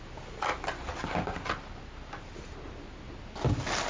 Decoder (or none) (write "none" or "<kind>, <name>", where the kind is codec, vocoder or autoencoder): none